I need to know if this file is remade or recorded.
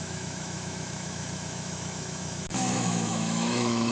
remade